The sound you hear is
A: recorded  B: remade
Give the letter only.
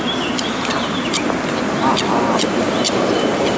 B